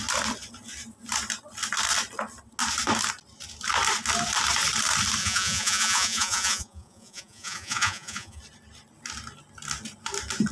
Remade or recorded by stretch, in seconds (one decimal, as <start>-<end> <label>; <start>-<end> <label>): 0.0-5.2 recorded; 5.2-8.4 remade; 8.4-10.5 recorded